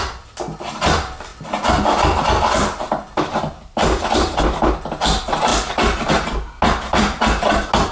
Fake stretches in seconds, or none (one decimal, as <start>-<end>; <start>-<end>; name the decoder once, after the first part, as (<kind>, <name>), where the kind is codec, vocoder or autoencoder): none